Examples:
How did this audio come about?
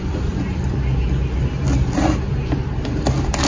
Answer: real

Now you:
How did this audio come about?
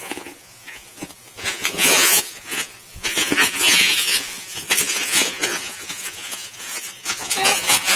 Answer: fake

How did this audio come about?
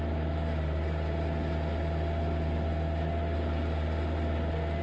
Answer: real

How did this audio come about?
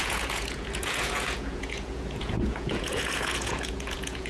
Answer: fake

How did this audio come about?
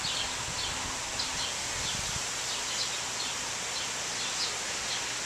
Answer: real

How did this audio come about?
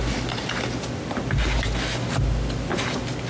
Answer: real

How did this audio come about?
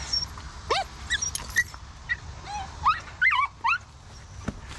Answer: real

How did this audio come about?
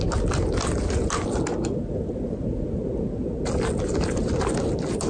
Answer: real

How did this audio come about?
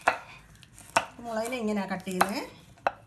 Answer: real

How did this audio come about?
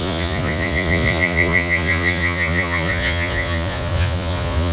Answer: fake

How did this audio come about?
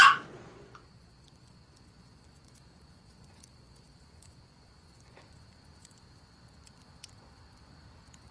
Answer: fake